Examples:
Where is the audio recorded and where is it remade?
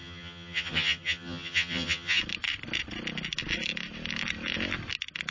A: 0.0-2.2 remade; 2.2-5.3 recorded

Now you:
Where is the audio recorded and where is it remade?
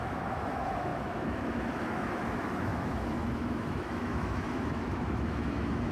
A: 0.0-5.9 remade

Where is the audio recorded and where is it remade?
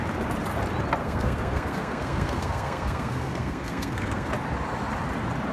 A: 0.0-1.0 recorded; 1.0-4.3 remade; 4.3-5.5 recorded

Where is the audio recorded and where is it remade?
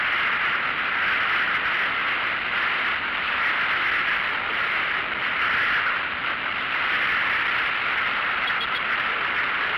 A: 0.0-2.0 remade; 2.0-3.0 recorded; 3.0-9.8 remade